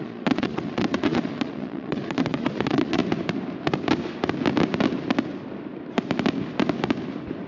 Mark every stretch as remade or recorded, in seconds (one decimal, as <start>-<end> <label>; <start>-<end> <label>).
0.0-3.0 remade; 3.0-7.5 recorded